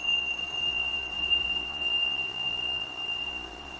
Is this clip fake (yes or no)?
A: yes